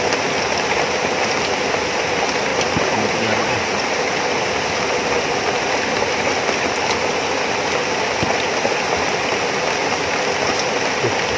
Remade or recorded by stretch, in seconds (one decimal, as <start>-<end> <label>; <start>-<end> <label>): 0.0-11.4 recorded